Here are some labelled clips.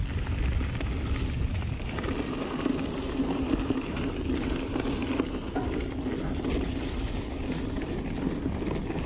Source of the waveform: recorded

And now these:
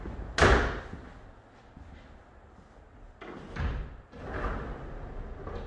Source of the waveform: recorded